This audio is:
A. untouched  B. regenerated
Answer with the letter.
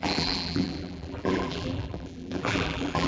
B